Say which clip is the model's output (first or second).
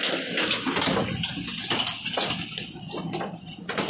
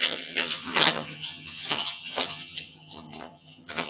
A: second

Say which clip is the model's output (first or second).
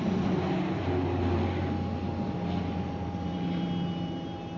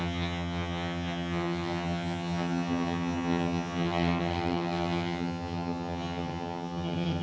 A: second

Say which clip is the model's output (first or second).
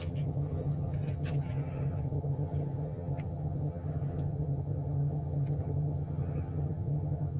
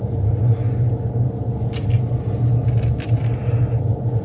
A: first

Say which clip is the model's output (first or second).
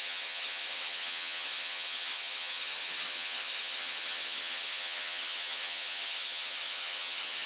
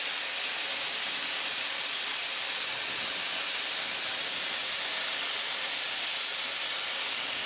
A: first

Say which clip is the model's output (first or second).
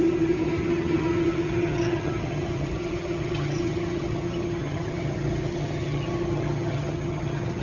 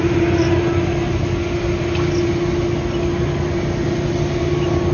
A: first